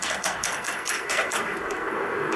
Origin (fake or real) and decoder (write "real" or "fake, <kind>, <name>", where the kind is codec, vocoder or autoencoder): fake, codec, SNAC